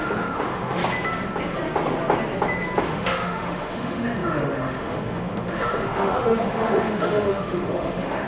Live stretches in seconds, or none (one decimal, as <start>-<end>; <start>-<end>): 0.8-2.8